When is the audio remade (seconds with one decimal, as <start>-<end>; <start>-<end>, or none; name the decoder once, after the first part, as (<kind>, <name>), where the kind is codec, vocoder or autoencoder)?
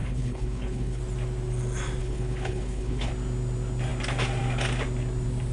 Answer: 0.0-1.0 (codec, HILCodec); 2.0-3.1